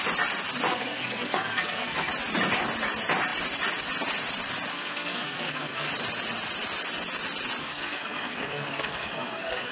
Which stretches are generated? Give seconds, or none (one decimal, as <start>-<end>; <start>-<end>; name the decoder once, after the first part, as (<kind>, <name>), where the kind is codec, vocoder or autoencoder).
0.7-2.1 (codec, SNAC); 4.7-5.9; 7.6-9.7